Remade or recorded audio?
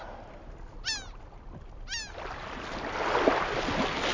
recorded